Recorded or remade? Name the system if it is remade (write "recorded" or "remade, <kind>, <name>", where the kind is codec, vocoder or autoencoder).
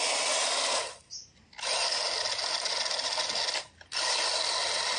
recorded